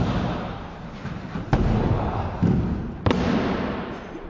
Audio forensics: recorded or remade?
recorded